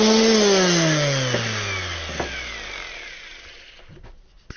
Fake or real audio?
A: real